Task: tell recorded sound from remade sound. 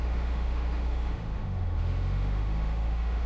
remade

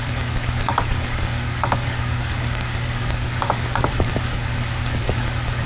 remade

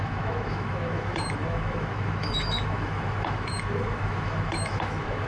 remade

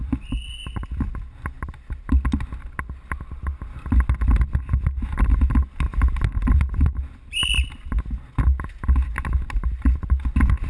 recorded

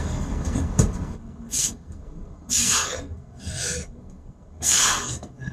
remade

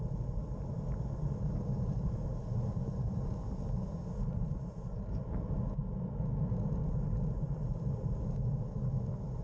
recorded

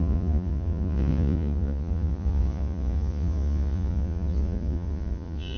remade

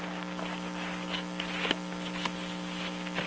recorded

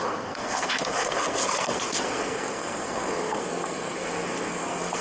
remade